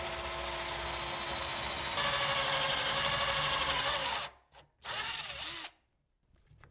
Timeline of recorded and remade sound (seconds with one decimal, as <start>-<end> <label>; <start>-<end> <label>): 0.0-4.0 recorded; 4.0-4.6 remade; 4.6-6.7 recorded